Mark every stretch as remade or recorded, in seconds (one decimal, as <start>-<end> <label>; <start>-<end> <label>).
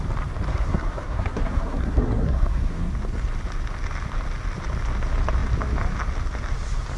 0.0-0.5 recorded; 0.5-2.9 remade; 2.9-7.0 recorded